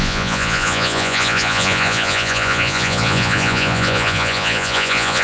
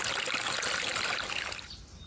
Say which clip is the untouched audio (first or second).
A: second